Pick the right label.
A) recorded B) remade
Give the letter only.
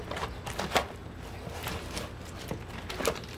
A